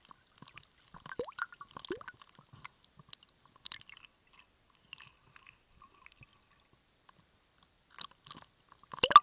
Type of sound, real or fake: real